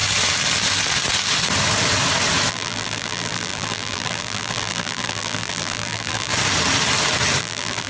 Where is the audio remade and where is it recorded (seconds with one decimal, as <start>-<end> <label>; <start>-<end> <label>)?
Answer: 0.0-2.5 recorded; 2.5-6.3 remade; 6.3-7.4 recorded; 7.4-7.9 remade